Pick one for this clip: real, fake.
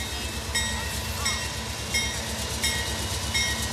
real